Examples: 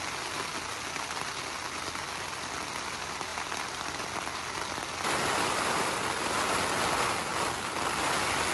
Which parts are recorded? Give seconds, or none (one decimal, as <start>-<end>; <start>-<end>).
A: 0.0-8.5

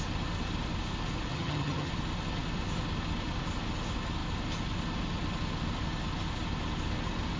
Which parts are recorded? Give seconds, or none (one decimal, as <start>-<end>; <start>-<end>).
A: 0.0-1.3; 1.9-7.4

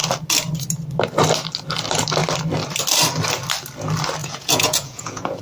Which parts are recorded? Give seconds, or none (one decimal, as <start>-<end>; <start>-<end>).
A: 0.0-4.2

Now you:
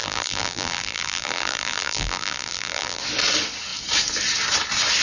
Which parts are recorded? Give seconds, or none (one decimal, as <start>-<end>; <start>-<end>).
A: 3.0-5.0

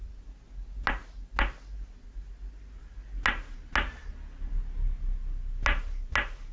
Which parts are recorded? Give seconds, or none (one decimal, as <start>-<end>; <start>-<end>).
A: 0.0-6.5

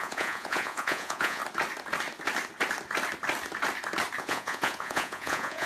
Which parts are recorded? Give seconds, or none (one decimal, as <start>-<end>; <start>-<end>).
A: 1.4-4.2